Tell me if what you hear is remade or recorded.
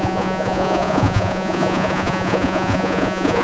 remade